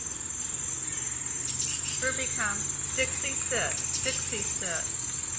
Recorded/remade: recorded